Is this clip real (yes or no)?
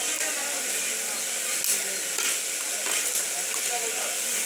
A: yes